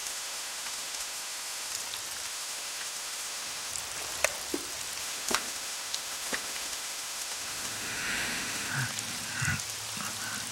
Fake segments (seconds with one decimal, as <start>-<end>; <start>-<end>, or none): 0.0-1.7; 2.3-3.7; 5.0-8.7